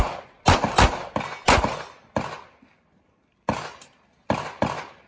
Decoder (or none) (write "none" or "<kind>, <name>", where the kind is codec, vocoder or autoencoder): none